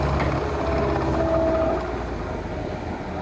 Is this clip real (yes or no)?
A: yes